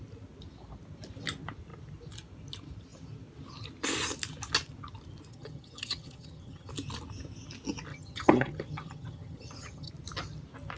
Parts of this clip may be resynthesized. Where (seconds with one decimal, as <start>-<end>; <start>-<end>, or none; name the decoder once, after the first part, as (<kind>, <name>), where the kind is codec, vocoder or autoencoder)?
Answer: 5.3-6.7 (vocoder, HiFi-GAN); 7.9-9.9